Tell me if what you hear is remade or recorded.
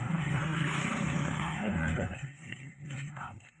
remade